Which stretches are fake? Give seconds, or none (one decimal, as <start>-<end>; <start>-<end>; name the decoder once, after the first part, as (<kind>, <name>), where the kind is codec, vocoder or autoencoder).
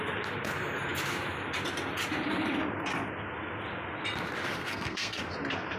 4.6-5.2 (codec, SNAC)